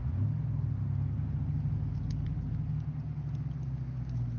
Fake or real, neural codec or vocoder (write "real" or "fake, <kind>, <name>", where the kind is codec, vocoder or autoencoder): real